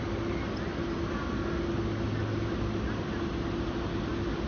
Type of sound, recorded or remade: recorded